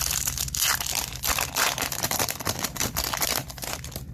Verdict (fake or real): fake